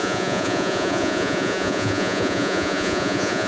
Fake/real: fake